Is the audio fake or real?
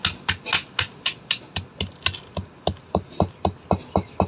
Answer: real